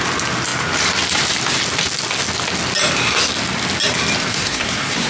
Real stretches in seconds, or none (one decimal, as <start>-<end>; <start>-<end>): 0.0-4.3